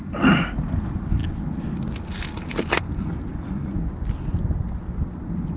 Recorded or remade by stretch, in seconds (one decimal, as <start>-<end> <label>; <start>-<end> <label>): 0.0-3.3 recorded; 3.3-3.8 remade; 3.8-5.6 recorded